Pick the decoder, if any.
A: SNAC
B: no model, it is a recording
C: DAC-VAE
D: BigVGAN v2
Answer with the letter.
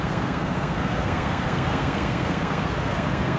A